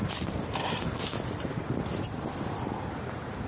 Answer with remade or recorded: remade